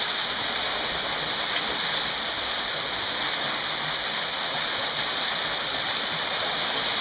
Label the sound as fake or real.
real